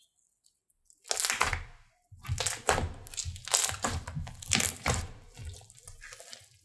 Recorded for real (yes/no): yes